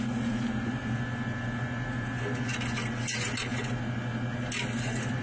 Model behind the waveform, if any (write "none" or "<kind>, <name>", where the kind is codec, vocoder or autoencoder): none